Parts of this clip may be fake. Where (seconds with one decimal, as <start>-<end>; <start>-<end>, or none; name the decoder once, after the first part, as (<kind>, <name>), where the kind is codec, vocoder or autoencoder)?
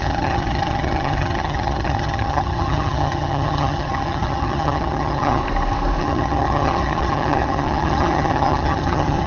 0.0-5.4 (vocoder, HiFi-GAN); 6.0-9.3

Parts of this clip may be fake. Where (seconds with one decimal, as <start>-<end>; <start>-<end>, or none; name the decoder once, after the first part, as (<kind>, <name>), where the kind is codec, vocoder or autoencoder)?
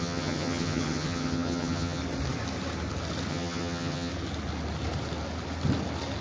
0.0-2.0 (vocoder, HiFi-GAN); 3.3-4.1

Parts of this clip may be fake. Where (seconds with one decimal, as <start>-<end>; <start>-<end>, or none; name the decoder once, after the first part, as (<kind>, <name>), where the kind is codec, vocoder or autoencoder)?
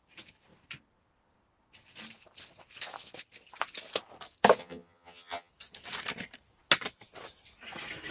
4.6-5.5 (vocoder, HiFi-GAN)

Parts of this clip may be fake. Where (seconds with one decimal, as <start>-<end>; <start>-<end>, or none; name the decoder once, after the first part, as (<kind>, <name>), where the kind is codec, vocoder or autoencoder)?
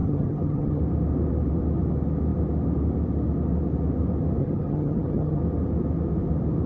0.0-0.8 (vocoder, HiFi-GAN); 4.4-5.4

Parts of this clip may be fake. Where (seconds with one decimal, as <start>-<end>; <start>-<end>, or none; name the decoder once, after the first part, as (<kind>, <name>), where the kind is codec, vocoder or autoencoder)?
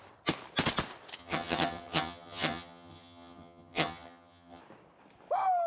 1.2-4.6 (vocoder, HiFi-GAN)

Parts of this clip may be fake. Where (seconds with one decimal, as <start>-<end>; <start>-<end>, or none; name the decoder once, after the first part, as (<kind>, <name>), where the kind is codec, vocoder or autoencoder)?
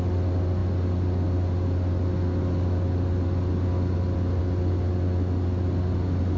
none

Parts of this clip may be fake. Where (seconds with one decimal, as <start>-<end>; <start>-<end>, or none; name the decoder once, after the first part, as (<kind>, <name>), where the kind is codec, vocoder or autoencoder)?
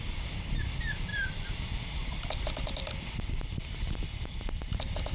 none